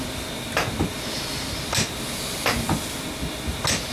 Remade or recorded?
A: recorded